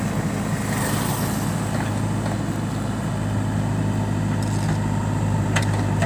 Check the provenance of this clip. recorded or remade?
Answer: recorded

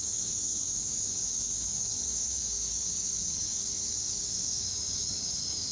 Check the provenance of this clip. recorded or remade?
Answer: remade